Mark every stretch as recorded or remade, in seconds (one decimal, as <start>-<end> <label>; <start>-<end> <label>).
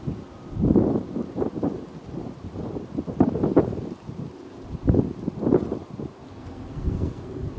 0.0-6.3 recorded; 6.3-7.6 remade